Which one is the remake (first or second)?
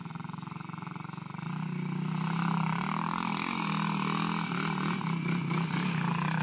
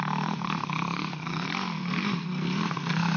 second